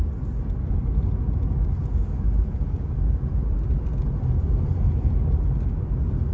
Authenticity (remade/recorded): recorded